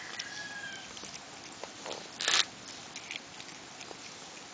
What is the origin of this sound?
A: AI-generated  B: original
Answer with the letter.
B